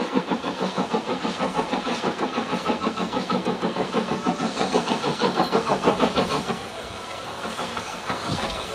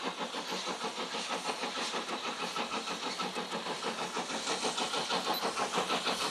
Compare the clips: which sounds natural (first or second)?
second